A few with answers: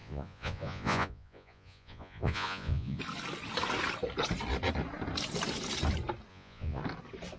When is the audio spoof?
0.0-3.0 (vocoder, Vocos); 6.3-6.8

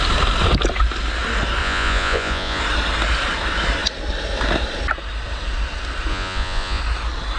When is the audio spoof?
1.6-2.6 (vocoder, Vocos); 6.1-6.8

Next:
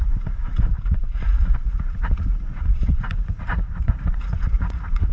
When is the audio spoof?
0.0-5.1 (vocoder, Vocos)

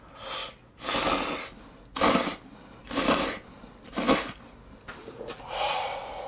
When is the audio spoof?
5.0-6.3 (vocoder, Vocos)

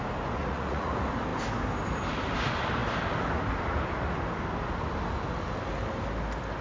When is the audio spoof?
0.4-0.9 (vocoder, Vocos)

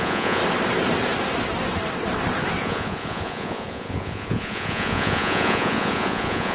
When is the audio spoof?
0.0-0.4 (vocoder, Vocos); 2.6-6.5

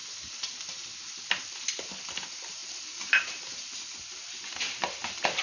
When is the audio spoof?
none

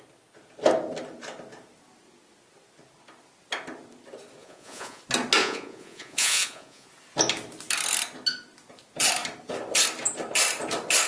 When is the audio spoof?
4.4-5.0 (vocoder, Vocos); 5.4-6.9